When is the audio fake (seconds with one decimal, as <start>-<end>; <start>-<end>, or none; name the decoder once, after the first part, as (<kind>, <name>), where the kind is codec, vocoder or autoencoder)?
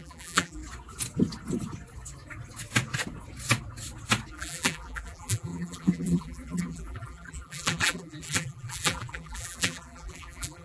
0.0-0.6 (vocoder, BigVGAN v2); 4.3-10.6